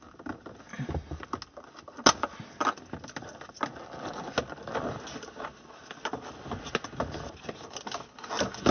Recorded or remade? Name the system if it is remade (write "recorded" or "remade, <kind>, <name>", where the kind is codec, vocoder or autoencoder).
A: recorded